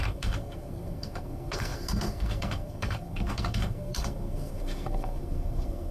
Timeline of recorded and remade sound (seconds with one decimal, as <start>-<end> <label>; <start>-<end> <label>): 0.0-5.9 remade